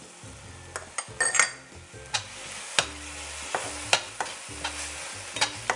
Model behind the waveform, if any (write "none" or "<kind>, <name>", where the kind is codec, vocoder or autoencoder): none